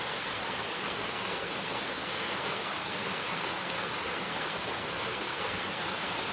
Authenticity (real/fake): fake